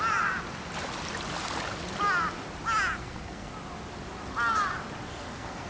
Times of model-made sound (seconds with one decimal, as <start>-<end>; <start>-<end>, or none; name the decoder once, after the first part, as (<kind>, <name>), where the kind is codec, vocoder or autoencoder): 3.0-3.5 (codec, SNAC); 5.1-5.7